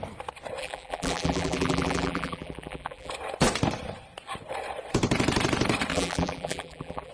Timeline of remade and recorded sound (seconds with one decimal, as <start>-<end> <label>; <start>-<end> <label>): 0.0-0.6 recorded; 0.6-3.1 remade; 3.1-5.9 recorded; 5.9-7.1 remade